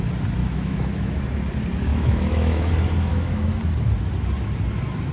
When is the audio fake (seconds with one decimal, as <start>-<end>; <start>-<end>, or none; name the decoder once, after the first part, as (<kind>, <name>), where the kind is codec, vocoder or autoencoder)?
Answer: 0.4-1.2 (autoencoder, DAC-VAE); 1.9-2.7; 3.1-3.6